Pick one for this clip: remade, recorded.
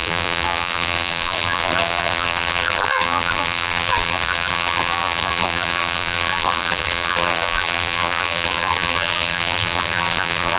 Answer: remade